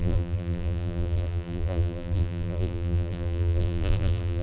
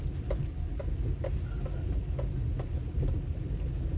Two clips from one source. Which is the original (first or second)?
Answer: second